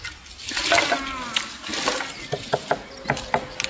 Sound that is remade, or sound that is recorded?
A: recorded